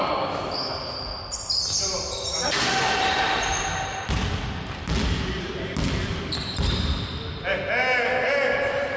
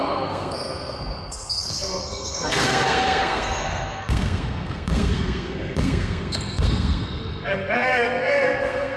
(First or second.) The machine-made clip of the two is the second